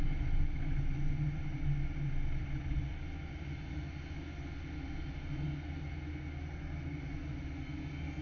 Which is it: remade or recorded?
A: recorded